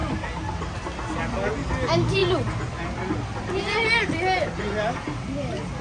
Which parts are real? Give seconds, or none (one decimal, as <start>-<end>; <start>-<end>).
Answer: 0.0-5.8